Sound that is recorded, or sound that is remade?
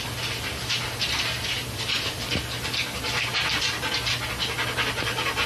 recorded